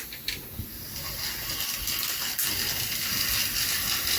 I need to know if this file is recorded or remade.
recorded